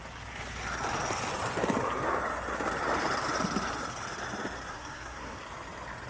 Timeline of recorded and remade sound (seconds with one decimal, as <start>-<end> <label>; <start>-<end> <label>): 0.0-4.7 recorded; 4.7-5.4 remade; 5.4-6.1 recorded